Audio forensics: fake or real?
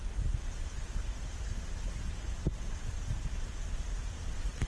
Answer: fake